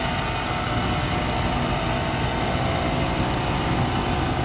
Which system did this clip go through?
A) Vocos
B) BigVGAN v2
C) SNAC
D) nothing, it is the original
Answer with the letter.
D